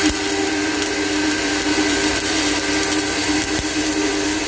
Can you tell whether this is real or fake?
real